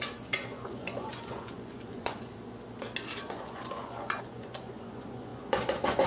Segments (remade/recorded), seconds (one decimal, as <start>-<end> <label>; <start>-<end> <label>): 0.0-2.3 remade; 2.3-3.3 recorded; 3.3-6.1 remade